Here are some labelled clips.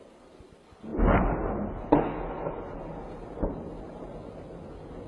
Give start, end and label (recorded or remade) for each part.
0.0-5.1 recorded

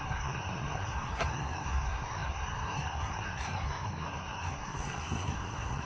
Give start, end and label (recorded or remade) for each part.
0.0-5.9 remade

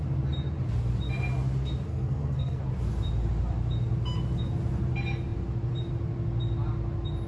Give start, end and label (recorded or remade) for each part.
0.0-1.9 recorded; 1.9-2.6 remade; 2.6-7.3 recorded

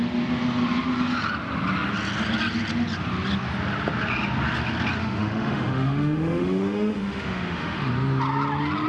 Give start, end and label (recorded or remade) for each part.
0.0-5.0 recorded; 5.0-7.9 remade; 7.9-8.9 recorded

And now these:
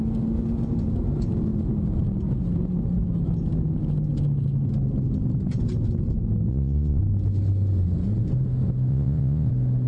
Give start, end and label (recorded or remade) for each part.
0.0-6.5 recorded; 6.5-7.0 remade; 7.0-8.9 recorded; 8.9-9.5 remade; 9.5-9.9 recorded

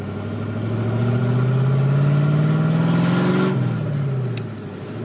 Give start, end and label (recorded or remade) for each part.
0.0-5.0 recorded